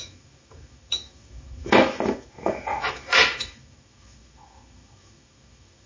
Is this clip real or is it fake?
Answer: fake